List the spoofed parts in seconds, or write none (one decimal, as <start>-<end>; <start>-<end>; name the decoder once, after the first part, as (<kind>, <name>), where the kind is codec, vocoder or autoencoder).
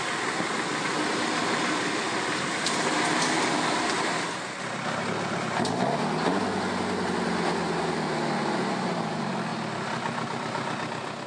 none